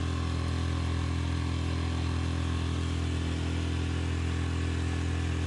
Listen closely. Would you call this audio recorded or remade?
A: recorded